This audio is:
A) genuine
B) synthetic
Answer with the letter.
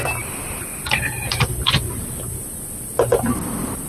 B